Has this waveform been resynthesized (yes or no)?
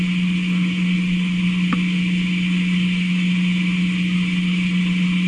no